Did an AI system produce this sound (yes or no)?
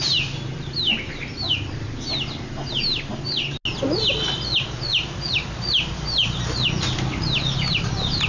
no